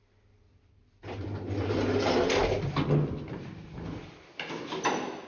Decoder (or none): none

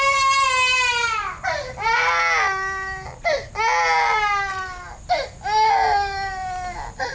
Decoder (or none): none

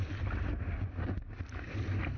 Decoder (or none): none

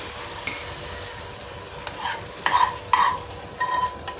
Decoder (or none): none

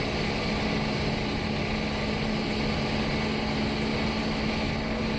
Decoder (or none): none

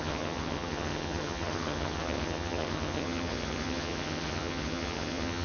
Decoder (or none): vocoder, HiFi-GAN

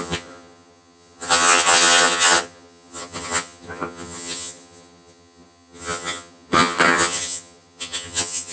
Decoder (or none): vocoder, HiFi-GAN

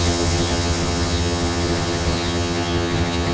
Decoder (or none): vocoder, HiFi-GAN